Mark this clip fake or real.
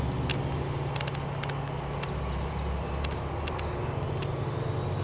real